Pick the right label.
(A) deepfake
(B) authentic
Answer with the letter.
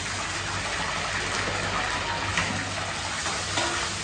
B